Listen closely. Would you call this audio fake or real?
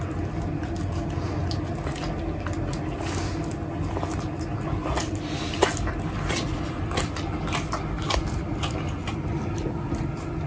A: real